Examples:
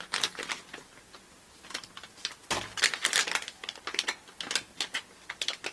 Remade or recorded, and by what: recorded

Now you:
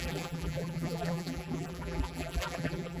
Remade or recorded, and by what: remade, vocoder, BigVGAN v2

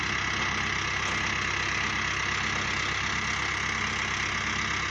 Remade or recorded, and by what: recorded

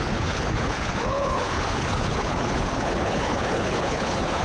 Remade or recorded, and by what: remade, codec, HILCodec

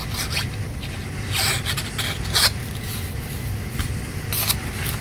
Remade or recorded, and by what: recorded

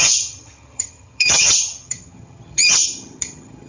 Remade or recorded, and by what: remade, vocoder, HiFi-GAN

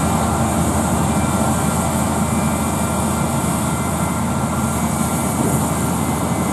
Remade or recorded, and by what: recorded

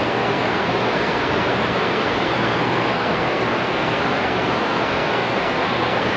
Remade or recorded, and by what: remade, codec, SNAC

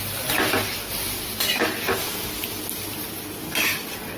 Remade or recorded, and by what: recorded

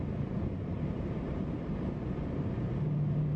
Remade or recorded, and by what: remade, vocoder, BigVGAN v2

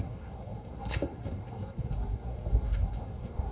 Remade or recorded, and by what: remade, codec, SNAC